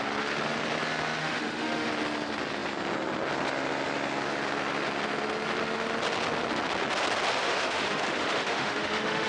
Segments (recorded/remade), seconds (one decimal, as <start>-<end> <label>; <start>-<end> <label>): 0.0-1.2 recorded; 1.2-1.9 remade; 1.9-7.4 recorded; 7.4-9.3 remade